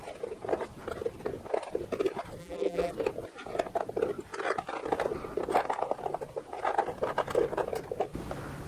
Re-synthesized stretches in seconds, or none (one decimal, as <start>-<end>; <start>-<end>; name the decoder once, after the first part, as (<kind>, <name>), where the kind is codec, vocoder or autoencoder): 2.4-2.9 (vocoder, BigVGAN v2)